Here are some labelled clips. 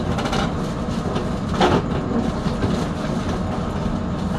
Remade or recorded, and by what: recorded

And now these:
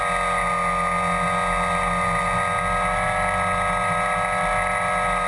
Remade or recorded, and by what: recorded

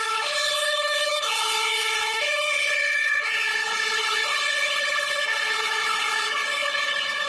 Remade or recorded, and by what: remade, codec, HILCodec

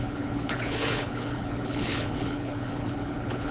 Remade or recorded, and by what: remade, codec, HILCodec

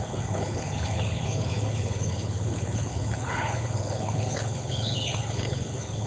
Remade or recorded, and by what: remade, codec, HILCodec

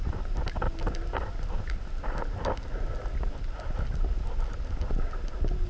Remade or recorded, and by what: recorded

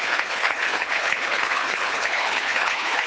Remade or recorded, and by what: remade, codec, HILCodec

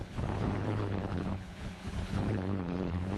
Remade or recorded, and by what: remade, codec, HILCodec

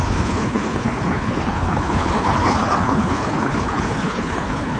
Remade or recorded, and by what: remade, codec, HILCodec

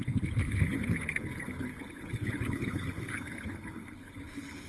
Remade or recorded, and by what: remade, codec, HILCodec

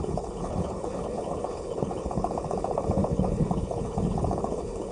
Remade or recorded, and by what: remade, codec, HILCodec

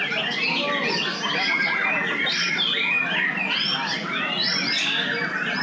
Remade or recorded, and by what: recorded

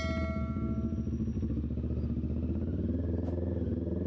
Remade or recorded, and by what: recorded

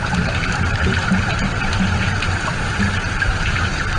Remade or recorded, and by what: recorded